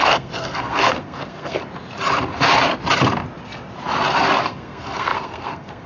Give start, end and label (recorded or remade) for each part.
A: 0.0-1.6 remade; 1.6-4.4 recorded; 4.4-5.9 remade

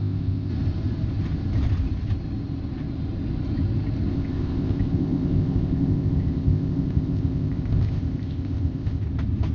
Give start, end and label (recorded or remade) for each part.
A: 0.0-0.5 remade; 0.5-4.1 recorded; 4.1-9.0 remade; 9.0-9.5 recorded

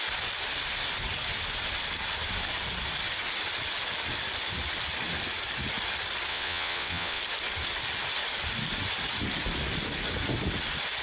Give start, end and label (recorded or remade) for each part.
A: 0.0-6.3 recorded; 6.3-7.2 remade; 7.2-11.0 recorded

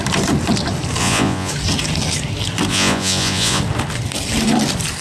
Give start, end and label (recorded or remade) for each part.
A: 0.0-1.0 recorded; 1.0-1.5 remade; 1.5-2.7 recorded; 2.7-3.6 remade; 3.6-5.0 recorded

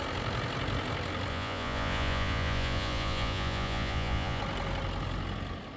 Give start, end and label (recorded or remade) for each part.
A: 0.0-1.3 recorded; 1.3-4.4 remade; 4.4-5.8 recorded

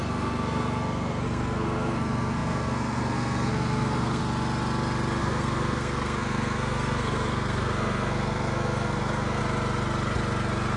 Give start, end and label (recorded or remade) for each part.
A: 0.0-4.2 remade; 4.2-5.2 recorded; 5.2-9.4 remade; 9.4-10.8 recorded

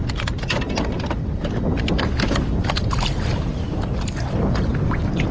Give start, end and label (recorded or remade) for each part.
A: 0.0-5.3 recorded

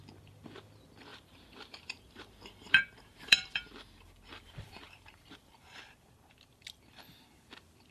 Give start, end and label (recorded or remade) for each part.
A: 0.0-1.1 recorded; 1.1-5.8 remade; 5.8-7.9 recorded